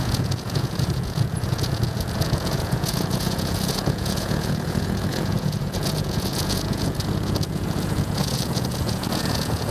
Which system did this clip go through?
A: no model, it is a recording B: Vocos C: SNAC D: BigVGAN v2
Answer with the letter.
B